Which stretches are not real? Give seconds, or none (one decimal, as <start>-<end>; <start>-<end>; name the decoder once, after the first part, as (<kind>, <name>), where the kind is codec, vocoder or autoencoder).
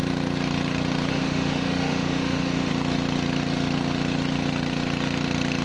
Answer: 1.1-2.7 (autoencoder, DAC-VAE)